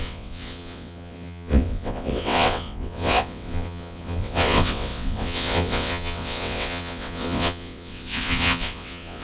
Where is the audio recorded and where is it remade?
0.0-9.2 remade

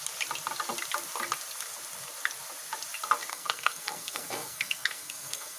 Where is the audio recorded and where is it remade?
0.0-3.3 recorded; 3.3-5.6 remade

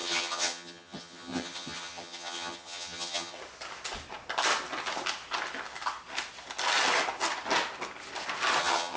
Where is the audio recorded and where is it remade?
0.0-3.4 remade; 3.4-8.6 recorded; 8.6-9.0 remade

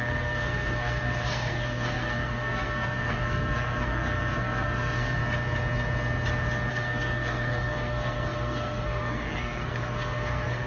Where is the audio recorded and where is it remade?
0.0-5.2 remade; 5.2-6.7 recorded; 6.7-10.7 remade

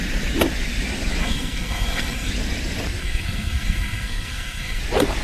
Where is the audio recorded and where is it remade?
0.0-1.2 recorded; 1.2-2.3 remade; 2.3-3.0 recorded; 3.0-4.8 remade; 4.8-5.2 recorded

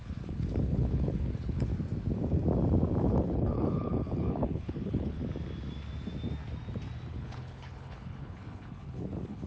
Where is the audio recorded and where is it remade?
0.0-1.7 remade; 1.7-3.0 recorded; 3.0-5.2 remade; 5.2-7.1 recorded; 7.1-9.5 remade

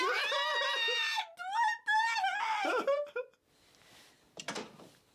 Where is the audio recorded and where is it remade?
0.0-5.1 recorded